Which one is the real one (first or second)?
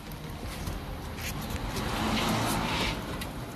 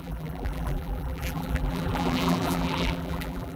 first